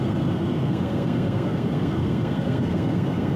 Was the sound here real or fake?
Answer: fake